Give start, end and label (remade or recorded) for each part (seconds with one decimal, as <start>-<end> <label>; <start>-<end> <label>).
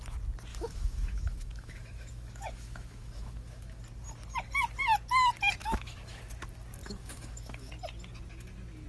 0.0-0.5 recorded; 0.5-3.8 remade; 3.8-5.6 recorded; 5.6-6.2 remade; 6.2-6.8 recorded; 6.8-7.7 remade; 7.7-8.9 recorded